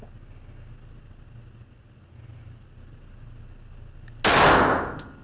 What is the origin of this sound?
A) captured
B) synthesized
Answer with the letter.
A